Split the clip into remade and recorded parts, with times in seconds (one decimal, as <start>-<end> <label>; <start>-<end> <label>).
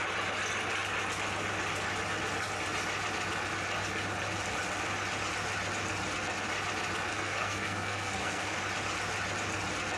0.0-7.1 recorded; 7.1-8.6 remade; 8.6-10.0 recorded